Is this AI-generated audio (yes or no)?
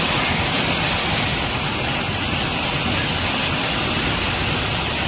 no